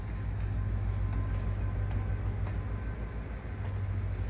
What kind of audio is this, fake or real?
real